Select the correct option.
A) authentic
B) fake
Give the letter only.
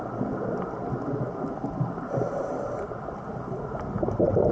A